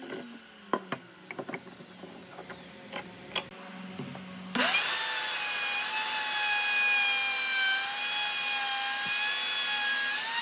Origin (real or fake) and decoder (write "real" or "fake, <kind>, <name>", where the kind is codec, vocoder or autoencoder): real